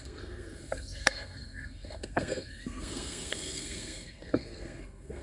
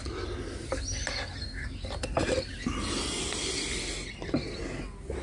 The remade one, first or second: first